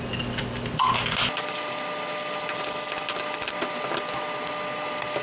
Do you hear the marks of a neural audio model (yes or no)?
no